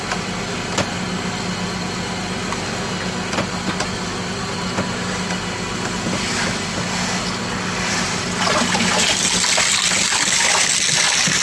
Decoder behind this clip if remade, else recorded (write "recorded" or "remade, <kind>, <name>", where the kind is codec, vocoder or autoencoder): recorded